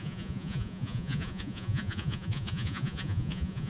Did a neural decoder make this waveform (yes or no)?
yes